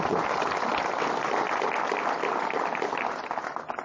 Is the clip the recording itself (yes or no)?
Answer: yes